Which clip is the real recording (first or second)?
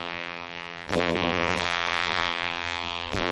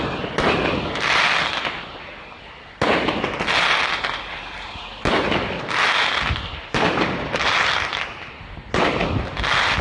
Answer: second